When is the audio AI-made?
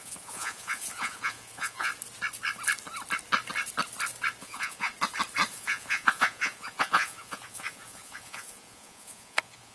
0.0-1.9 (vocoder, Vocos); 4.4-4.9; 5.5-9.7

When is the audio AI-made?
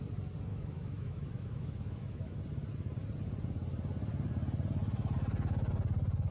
0.5-2.4 (autoencoder, DAC-VAE)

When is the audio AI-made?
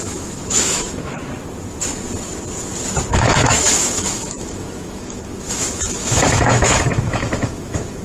0.0-1.2 (autoencoder, DAC-VAE); 3.1-8.0